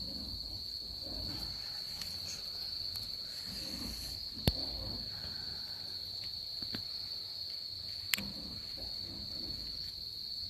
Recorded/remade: recorded